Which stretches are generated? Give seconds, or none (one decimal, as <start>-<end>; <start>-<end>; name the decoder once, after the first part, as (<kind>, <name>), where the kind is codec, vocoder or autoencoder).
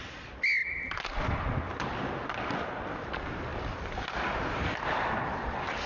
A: none